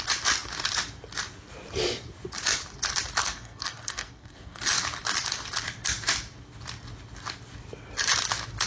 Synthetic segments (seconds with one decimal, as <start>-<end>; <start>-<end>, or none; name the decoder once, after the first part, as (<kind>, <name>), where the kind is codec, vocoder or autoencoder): 3.2-4.6 (codec, SNAC)